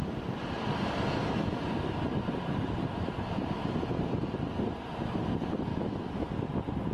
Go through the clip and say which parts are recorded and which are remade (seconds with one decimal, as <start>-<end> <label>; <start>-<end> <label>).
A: 0.0-5.7 recorded; 5.7-6.3 remade; 6.3-6.9 recorded